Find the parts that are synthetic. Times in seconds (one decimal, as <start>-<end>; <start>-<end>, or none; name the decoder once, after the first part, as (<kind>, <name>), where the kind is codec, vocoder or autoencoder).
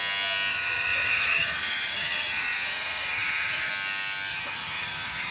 0.5-3.7 (vocoder, HiFi-GAN); 4.3-5.3